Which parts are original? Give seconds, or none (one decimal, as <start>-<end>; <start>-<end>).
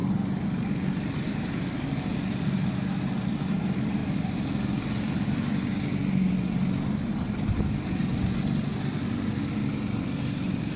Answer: 0.0-4.0; 4.6-10.8